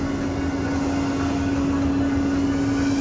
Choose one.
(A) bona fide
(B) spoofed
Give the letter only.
A